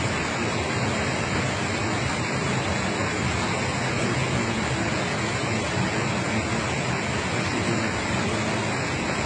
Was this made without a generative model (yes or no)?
yes